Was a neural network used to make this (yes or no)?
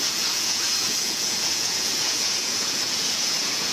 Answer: yes